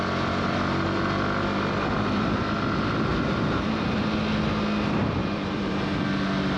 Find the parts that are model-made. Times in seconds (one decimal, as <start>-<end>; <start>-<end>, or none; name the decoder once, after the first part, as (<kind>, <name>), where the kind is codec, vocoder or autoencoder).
3.1-4.0 (vocoder, BigVGAN v2); 5.2-5.7